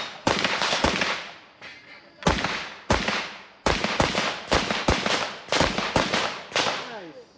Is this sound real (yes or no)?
yes